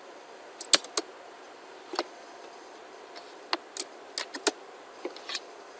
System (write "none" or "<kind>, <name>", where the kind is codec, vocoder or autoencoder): none